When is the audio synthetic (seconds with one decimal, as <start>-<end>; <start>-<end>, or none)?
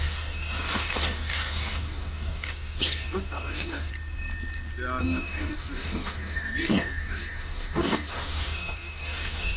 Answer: 0.0-3.9; 5.0-9.6